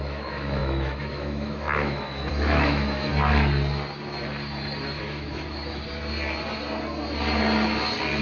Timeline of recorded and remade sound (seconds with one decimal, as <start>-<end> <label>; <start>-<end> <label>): 0.0-3.1 remade; 3.1-5.0 recorded; 5.0-5.8 remade; 5.8-8.2 recorded